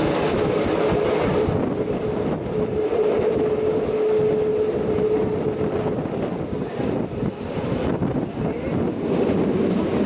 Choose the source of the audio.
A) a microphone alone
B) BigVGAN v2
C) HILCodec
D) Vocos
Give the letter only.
A